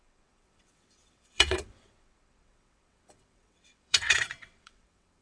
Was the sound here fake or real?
fake